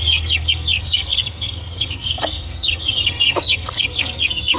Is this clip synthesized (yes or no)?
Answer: yes